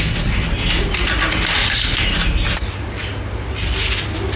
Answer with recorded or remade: recorded